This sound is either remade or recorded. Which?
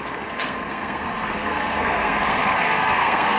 remade